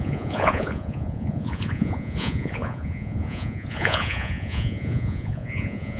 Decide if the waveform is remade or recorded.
remade